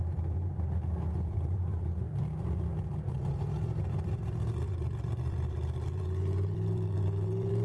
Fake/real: fake